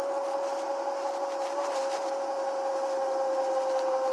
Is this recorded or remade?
recorded